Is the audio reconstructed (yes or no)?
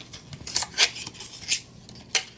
no